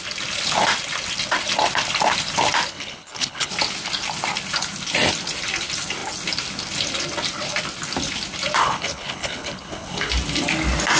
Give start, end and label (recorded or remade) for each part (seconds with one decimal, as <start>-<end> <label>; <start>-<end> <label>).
0.0-2.7 recorded; 2.7-3.5 remade; 3.5-8.6 recorded; 8.6-10.1 remade; 10.1-11.0 recorded